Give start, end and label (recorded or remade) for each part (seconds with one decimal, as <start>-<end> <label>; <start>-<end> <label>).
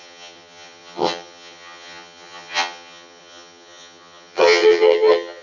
0.0-5.4 remade